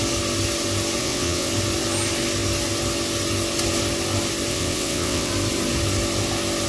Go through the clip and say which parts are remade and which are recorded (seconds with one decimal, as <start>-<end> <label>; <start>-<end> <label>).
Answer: 0.0-1.0 recorded; 1.0-1.5 remade; 1.5-4.5 recorded; 4.5-5.3 remade; 5.3-6.7 recorded

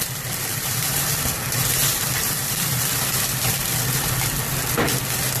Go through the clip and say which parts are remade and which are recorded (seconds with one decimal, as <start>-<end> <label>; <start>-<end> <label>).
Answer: 0.0-0.5 recorded; 0.5-3.7 remade; 3.7-5.4 recorded

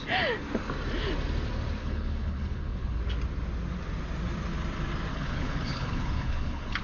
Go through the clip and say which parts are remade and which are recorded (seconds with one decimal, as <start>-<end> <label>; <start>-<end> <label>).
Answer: 0.0-1.8 recorded; 1.8-3.0 remade; 3.0-5.1 recorded; 5.1-6.8 remade

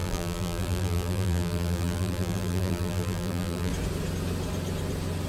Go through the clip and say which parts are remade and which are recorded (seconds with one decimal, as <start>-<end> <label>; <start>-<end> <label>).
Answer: 0.0-3.7 remade; 3.7-5.3 recorded

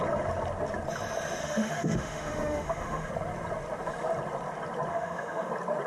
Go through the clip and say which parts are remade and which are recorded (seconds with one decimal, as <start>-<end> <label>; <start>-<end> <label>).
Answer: 0.0-1.4 recorded; 1.4-3.1 remade; 3.1-4.9 recorded; 4.9-5.5 remade; 5.5-5.9 recorded

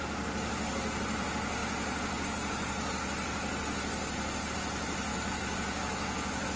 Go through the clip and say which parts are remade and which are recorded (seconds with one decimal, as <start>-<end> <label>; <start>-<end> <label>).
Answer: 0.0-5.1 recorded; 5.1-6.6 remade

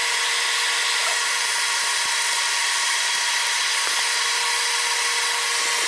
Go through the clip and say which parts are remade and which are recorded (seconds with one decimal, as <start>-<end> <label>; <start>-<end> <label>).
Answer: 0.0-5.9 recorded

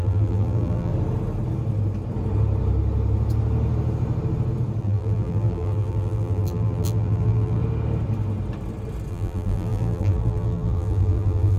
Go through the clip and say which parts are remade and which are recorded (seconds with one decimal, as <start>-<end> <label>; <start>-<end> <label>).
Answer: 0.0-0.9 remade; 0.9-4.8 recorded; 4.8-7.6 remade; 7.6-9.1 recorded; 9.1-11.6 remade